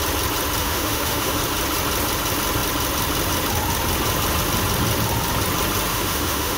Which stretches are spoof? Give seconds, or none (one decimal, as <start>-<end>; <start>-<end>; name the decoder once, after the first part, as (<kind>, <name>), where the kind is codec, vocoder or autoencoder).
0.6-1.4 (autoencoder, DAC-VAE); 5.9-6.6